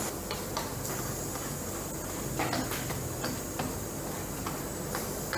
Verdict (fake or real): real